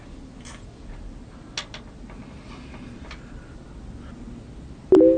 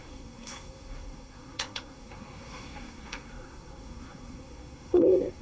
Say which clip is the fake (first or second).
second